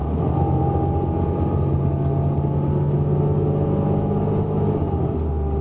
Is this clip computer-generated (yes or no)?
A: no